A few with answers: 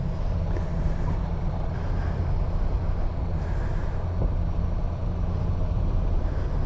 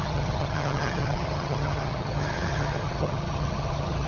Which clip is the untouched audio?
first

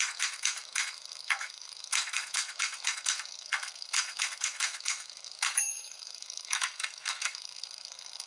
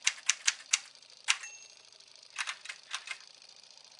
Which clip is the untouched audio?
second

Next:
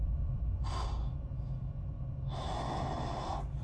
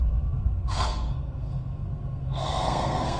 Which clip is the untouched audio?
first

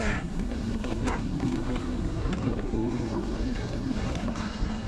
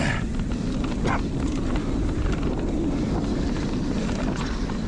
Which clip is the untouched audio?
second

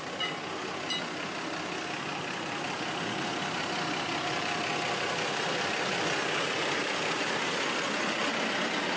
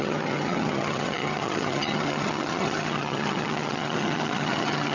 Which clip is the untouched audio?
first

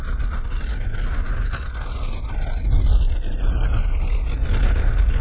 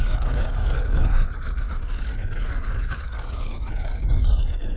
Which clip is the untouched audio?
first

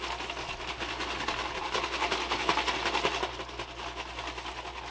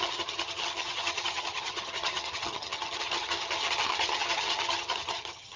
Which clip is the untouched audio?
first